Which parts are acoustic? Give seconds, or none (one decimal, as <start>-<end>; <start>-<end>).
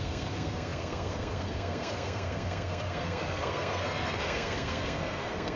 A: none